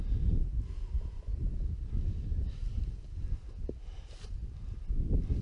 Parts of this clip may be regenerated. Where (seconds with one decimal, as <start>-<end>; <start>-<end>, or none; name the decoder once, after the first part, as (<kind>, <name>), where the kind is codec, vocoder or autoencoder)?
none